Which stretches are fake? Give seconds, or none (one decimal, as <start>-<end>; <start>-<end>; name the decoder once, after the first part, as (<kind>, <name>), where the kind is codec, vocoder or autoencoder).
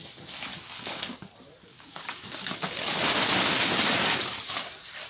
0.5-1.0 (codec, DAC); 1.7-2.9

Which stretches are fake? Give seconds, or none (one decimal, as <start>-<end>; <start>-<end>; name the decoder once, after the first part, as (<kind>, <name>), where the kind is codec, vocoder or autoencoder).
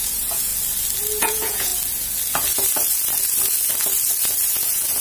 0.0-0.5 (vocoder, Vocos); 1.2-1.7; 4.5-5.0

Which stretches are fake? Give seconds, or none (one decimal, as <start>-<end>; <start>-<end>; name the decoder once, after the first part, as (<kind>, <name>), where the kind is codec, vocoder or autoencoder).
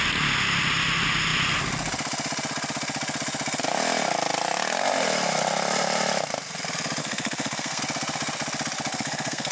7.0-7.8 (codec, SNAC); 8.9-9.5